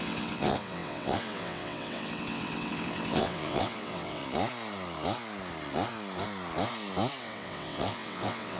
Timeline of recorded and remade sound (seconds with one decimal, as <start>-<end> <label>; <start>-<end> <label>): 0.0-4.2 remade; 4.2-7.2 recorded; 7.2-8.6 remade